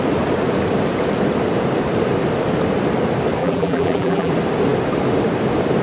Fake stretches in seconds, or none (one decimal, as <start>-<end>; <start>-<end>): 3.4-4.3